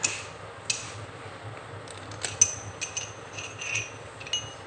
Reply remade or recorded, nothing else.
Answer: recorded